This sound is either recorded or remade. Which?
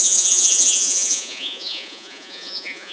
remade